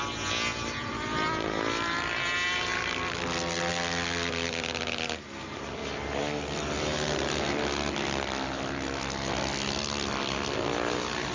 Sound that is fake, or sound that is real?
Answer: real